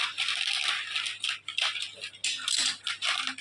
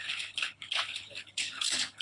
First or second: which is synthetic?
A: second